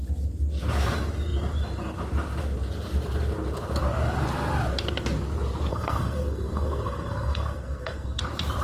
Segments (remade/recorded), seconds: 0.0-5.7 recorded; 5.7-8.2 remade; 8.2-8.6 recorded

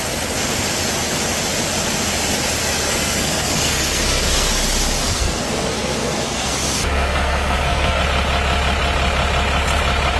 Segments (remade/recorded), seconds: 0.0-2.6 recorded; 2.6-4.5 remade; 4.5-5.0 recorded; 5.0-8.0 remade; 8.0-10.2 recorded

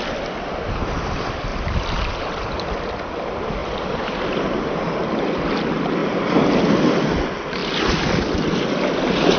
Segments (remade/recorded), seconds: 0.0-1.5 recorded; 1.5-2.7 remade; 2.7-3.6 recorded; 3.6-5.0 remade; 5.0-6.0 recorded; 6.0-6.6 remade; 6.6-9.4 recorded

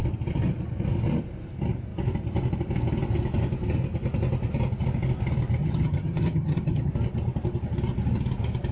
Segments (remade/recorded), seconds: 0.0-5.6 recorded; 5.6-6.9 remade; 6.9-8.7 recorded

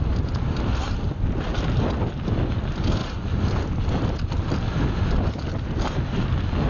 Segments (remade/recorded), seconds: 0.0-6.7 recorded

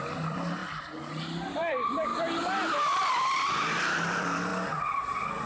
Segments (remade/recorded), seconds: 0.0-0.6 remade; 0.6-1.1 recorded; 1.1-2.1 remade; 2.1-3.1 recorded; 3.1-4.5 remade; 4.5-5.5 recorded